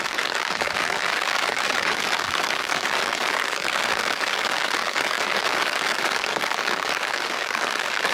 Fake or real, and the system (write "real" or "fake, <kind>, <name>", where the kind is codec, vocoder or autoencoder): fake, codec, DAC